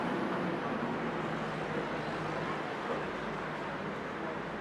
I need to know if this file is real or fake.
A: real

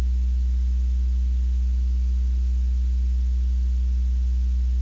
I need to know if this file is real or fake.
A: real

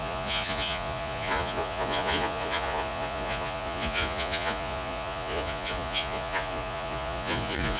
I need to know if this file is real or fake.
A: fake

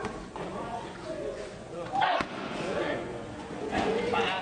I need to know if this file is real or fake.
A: fake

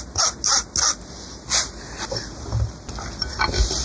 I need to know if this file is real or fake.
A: real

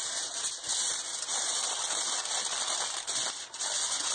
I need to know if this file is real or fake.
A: real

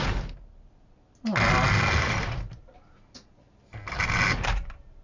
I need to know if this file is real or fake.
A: real